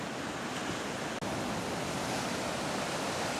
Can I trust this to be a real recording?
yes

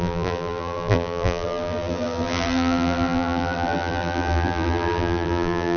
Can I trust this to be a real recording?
no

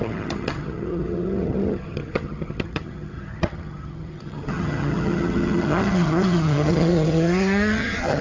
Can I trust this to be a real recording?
no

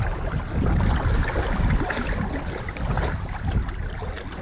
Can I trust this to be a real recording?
yes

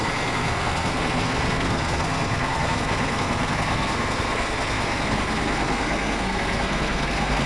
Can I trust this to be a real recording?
no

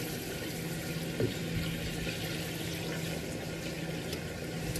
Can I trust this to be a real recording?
yes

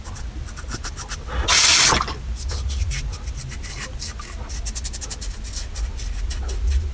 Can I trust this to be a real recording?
yes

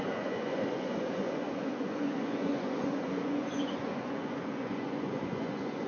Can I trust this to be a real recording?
no